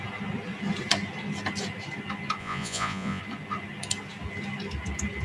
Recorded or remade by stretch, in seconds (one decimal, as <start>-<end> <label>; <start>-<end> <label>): 0.0-2.4 recorded; 2.4-3.2 remade; 3.2-5.2 recorded

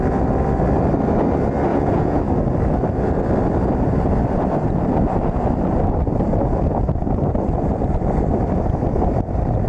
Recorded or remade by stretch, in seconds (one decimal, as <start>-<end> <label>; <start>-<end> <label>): 0.0-1.7 recorded; 1.7-2.2 remade; 2.2-9.7 recorded